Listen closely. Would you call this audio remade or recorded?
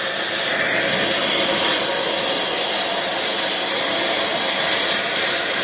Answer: recorded